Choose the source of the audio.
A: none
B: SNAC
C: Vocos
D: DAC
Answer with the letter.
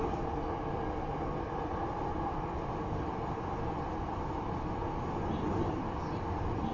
A